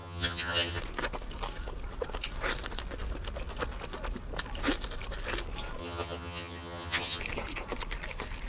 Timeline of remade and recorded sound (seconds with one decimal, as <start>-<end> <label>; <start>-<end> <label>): 0.0-0.8 remade; 0.8-5.8 recorded; 5.8-7.2 remade; 7.2-8.5 recorded

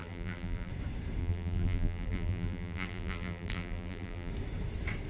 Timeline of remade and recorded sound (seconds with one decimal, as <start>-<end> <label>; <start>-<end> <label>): 0.0-0.7 remade; 0.7-1.2 recorded; 1.2-4.3 remade; 4.3-5.1 recorded

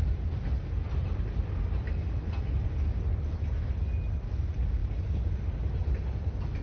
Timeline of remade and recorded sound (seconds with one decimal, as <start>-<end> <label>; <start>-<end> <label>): 0.0-6.6 recorded